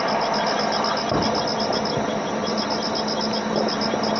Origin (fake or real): real